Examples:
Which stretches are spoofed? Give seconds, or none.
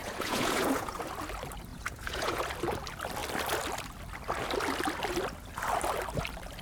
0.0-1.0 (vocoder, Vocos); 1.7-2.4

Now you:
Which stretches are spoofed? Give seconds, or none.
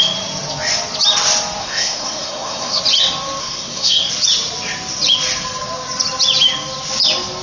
1.6-2.8 (codec, SNAC); 3.4-4.1